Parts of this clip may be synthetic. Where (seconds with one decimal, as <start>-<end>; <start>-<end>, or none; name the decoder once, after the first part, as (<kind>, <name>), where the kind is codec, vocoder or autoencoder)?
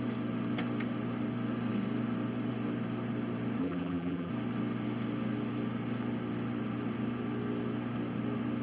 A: 3.6-4.3 (vocoder, BigVGAN v2)